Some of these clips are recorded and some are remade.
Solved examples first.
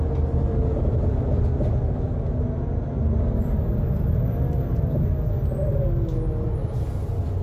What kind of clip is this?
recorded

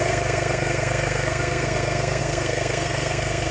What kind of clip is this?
remade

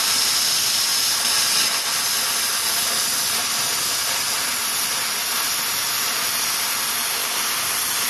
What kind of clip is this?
recorded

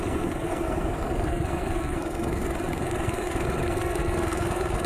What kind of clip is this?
remade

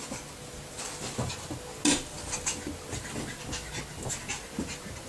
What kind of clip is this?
recorded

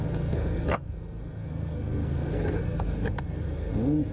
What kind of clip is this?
remade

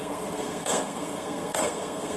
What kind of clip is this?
remade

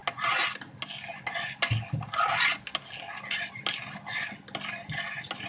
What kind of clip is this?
recorded